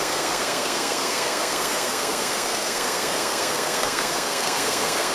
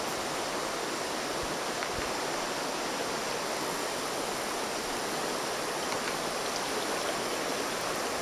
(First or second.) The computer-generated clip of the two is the first